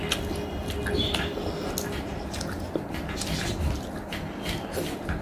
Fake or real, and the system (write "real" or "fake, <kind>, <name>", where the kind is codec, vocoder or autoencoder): real